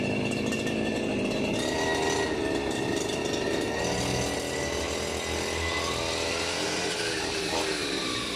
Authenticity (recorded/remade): recorded